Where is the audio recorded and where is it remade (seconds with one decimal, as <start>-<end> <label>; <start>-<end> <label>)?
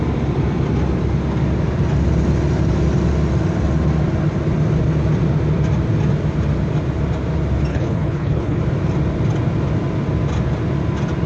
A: 0.0-7.7 recorded; 7.7-8.6 remade; 8.6-11.3 recorded